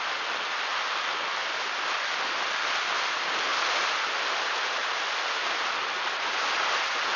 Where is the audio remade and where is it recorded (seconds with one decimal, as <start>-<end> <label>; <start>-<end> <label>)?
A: 0.0-7.2 recorded